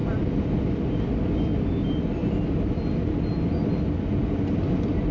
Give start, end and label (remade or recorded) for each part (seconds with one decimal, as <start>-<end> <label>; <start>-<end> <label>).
0.0-5.1 recorded

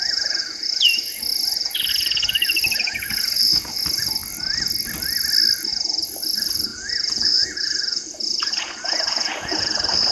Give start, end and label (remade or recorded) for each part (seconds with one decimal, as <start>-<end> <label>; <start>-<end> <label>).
0.0-4.2 remade; 4.2-5.7 recorded; 5.7-10.1 remade